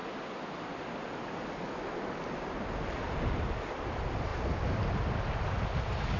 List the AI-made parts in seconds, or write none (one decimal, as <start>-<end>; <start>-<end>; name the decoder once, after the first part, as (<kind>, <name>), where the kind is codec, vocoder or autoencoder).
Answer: none